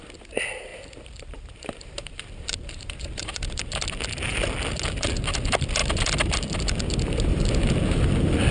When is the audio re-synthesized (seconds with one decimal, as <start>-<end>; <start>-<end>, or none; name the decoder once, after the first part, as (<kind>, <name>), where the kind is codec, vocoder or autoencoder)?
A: 0.7-3.6 (vocoder, BigVGAN v2)